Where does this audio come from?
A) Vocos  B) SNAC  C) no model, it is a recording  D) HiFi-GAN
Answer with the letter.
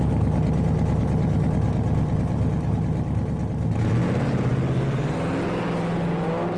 C